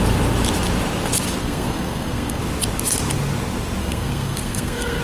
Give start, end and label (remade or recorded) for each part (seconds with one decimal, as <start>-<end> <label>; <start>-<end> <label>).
0.0-1.4 recorded; 1.4-2.4 remade; 2.4-3.8 recorded; 3.8-5.0 remade